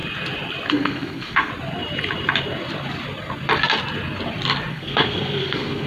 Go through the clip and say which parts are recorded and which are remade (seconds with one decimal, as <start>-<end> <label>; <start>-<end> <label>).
0.0-0.7 recorded; 0.7-1.5 remade; 1.5-4.7 recorded; 4.7-5.9 remade